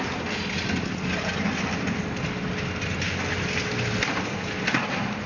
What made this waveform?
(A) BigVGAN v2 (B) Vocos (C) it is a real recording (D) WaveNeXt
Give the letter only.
C